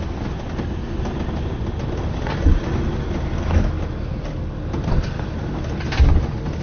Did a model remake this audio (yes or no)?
no